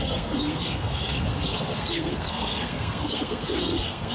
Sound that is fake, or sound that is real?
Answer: fake